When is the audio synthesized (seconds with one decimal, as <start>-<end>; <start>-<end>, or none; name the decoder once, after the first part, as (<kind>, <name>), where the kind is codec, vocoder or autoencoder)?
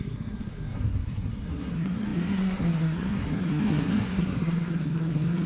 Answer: 0.0-5.5 (codec, SNAC)